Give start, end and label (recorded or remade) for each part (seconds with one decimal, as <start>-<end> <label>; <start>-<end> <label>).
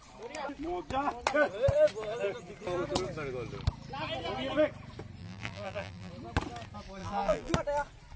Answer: 0.0-5.2 recorded; 5.2-6.1 remade; 6.1-7.0 recorded; 7.0-7.5 remade; 7.5-8.2 recorded